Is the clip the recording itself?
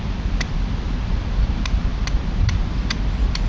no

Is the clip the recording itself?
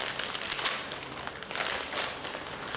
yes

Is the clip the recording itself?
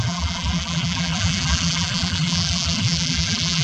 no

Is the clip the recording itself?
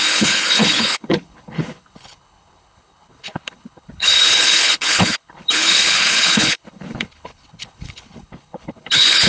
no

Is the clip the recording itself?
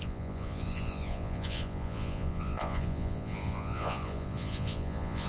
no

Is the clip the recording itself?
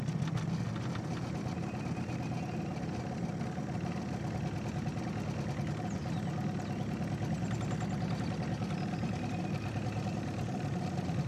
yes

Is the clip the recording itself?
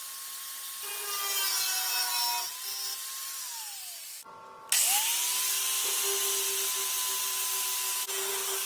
yes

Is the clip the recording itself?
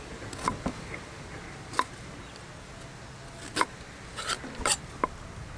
yes